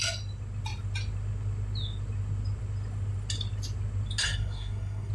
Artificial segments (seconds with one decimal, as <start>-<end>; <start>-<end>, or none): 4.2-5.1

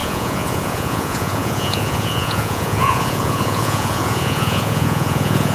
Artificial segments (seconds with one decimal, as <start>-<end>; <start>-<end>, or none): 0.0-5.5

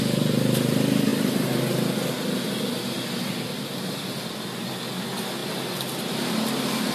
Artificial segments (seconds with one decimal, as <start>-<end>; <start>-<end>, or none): none